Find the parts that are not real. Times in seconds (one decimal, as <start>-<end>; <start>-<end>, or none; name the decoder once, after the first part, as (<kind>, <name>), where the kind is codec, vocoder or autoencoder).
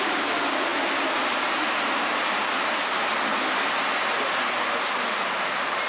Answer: 0.0-3.1 (vocoder, BigVGAN v2); 4.7-5.9